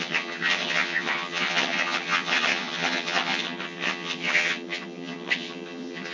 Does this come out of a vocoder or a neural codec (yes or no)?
yes